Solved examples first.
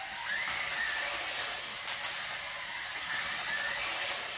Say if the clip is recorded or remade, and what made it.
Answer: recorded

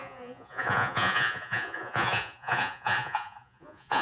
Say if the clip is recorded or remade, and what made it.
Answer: remade, vocoder, Vocos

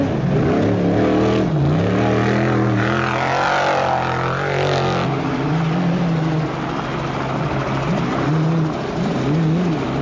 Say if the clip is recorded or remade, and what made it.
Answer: recorded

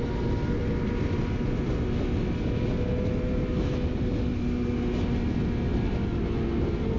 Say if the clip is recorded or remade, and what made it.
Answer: recorded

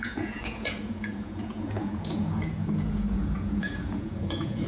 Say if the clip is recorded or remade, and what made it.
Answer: remade, vocoder, Vocos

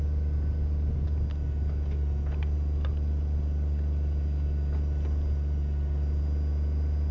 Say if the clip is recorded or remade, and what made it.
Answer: recorded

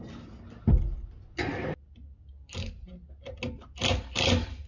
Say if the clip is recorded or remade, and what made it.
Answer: recorded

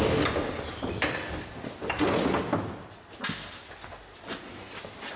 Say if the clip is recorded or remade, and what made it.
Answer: recorded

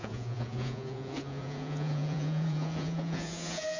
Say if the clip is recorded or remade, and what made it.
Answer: remade, vocoder, Vocos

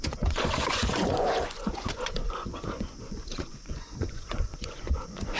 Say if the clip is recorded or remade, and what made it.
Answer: remade, vocoder, Vocos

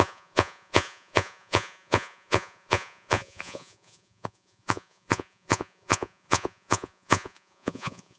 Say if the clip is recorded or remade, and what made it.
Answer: remade, vocoder, Vocos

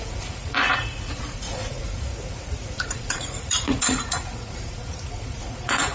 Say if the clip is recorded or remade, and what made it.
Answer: remade, vocoder, Vocos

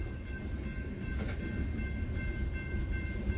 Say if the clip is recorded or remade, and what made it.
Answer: recorded